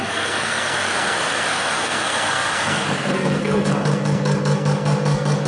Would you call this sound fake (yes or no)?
yes